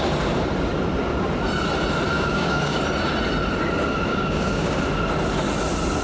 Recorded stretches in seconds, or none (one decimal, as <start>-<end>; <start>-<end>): 0.0-2.1; 2.8-4.1; 4.8-6.0